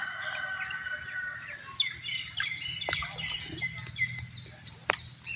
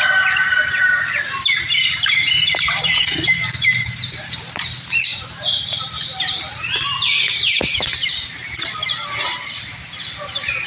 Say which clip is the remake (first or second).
second